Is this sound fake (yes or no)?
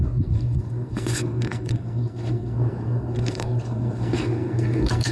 yes